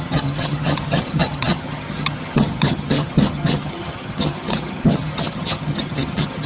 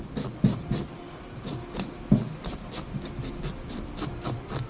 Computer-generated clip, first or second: first